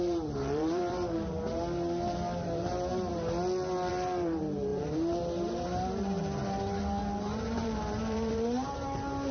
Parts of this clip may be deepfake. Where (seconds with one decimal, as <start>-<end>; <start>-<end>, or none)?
0.0-3.1; 3.9-9.3